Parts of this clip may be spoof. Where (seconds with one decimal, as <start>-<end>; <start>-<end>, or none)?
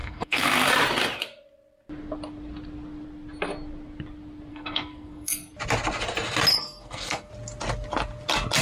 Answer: 0.0-0.7; 4.5-5.5; 6.5-7.3